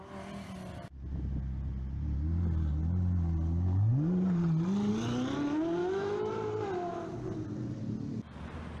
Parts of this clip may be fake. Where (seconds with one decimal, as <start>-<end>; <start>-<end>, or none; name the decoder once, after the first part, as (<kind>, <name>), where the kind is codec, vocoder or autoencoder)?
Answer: 5.8-6.3 (autoencoder, DAC-VAE)